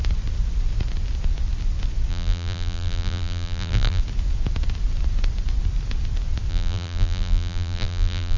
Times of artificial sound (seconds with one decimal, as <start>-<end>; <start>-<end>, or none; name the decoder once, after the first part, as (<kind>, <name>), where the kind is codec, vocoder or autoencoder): 2.1-4.0 (vocoder, BigVGAN v2); 6.5-8.4

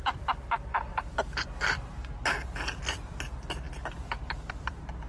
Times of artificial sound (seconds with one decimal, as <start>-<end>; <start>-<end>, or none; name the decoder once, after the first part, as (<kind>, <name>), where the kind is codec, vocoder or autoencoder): 0.9-1.9 (vocoder, BigVGAN v2); 2.4-5.1

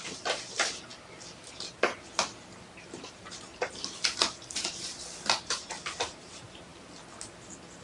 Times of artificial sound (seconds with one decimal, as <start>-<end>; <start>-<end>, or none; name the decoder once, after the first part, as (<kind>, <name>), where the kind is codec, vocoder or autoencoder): 0.0-0.9 (vocoder, BigVGAN v2); 2.7-3.5; 5.5-6.7

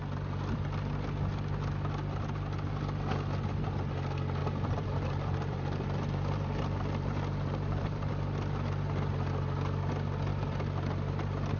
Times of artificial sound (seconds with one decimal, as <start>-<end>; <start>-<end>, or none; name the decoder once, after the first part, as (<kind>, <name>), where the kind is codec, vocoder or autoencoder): 4.4-8.1 (vocoder, BigVGAN v2)

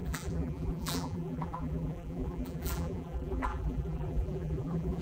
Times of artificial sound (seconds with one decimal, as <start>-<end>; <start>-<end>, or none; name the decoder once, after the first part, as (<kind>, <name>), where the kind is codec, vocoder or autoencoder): 0.0-5.0 (vocoder, BigVGAN v2)

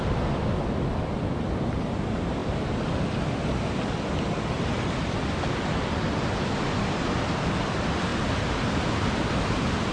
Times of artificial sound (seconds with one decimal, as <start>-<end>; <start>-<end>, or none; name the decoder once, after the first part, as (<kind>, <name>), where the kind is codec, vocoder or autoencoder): none

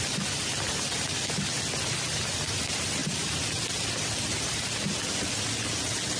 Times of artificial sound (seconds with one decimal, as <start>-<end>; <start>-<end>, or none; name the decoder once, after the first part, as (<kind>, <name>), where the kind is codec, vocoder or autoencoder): 3.0-5.4 (vocoder, BigVGAN v2)